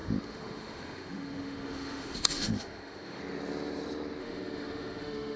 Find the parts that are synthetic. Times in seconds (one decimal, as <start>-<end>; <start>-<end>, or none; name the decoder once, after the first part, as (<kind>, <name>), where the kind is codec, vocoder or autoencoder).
0.0-3.2 (autoencoder, DAC-VAE); 4.2-5.4